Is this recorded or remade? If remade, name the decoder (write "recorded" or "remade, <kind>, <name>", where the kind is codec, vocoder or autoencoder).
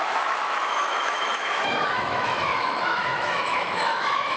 remade, autoencoder, DAC-VAE